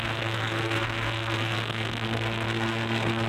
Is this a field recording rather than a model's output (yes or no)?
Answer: no